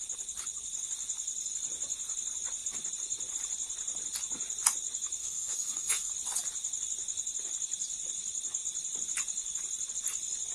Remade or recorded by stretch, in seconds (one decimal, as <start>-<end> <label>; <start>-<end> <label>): 0.0-5.2 recorded; 5.2-6.1 remade; 6.1-10.5 recorded